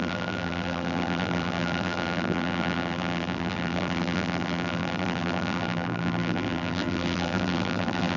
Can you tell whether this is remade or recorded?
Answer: remade